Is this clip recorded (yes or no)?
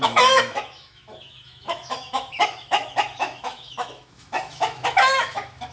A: no